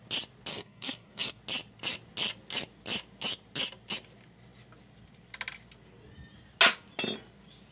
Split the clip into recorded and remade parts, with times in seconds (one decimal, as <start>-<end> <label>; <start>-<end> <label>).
0.0-0.5 recorded; 0.5-1.4 remade; 1.4-7.7 recorded